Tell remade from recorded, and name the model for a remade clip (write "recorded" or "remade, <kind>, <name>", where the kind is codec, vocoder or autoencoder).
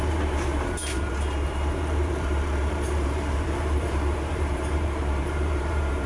remade, vocoder, BigVGAN v2